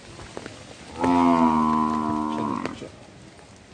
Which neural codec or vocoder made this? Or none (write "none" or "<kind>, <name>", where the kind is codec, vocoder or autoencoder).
none